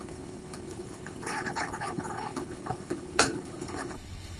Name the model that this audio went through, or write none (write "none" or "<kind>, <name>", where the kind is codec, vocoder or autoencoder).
codec, HILCodec